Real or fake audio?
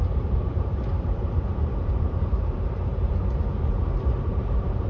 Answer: fake